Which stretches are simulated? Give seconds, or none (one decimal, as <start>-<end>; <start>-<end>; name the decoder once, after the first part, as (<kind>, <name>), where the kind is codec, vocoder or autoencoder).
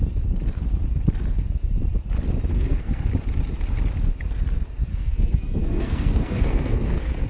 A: 2.5-3.1 (codec, SNAC); 4.9-7.3